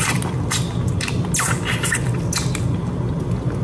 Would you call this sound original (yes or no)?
yes